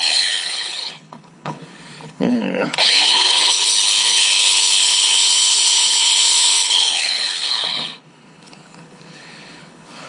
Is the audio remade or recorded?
remade